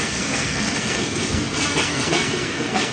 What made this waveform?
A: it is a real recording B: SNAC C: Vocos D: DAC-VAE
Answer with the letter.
B